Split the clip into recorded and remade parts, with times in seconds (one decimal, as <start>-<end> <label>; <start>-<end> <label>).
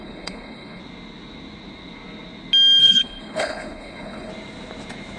0.0-0.8 remade; 0.8-2.8 recorded; 2.8-4.3 remade; 4.3-5.2 recorded